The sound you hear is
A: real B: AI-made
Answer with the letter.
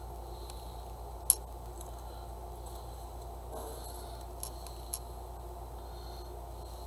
A